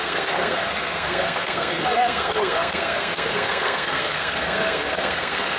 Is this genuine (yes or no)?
no